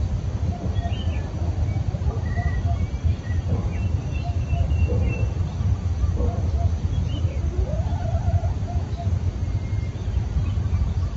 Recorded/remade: recorded